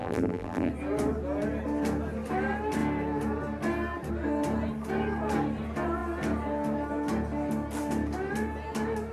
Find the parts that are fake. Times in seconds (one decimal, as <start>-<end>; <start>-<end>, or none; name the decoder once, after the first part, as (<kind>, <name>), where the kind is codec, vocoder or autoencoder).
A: 0.0-0.7 (vocoder, BigVGAN v2)